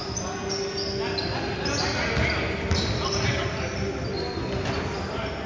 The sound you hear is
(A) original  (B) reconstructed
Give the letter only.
A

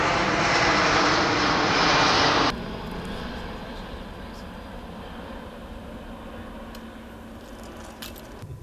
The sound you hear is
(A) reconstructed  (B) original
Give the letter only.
B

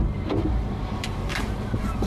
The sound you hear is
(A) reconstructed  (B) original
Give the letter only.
A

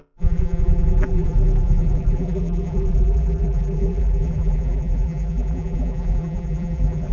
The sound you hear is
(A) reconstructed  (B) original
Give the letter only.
A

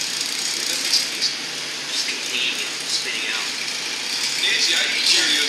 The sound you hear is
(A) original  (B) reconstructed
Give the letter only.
A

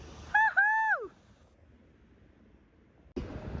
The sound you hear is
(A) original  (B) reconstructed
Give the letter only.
A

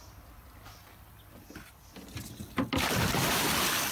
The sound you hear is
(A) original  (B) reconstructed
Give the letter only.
A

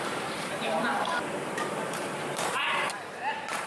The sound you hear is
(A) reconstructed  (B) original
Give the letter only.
A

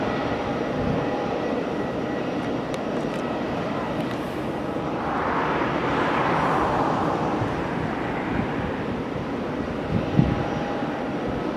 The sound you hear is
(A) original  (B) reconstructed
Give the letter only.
B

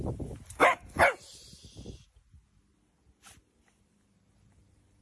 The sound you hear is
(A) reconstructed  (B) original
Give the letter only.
B